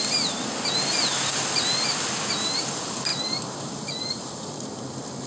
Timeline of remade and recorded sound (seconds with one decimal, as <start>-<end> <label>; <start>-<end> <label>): 0.0-3.1 recorded; 3.1-4.6 remade; 4.6-5.3 recorded